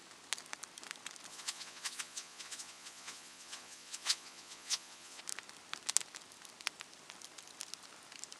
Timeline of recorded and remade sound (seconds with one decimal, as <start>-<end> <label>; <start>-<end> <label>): 0.0-1.3 recorded; 1.3-5.2 remade; 5.2-8.4 recorded